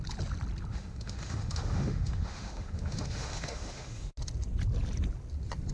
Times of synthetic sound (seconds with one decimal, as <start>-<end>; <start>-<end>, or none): 0.7-4.1